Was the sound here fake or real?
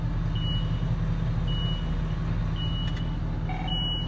real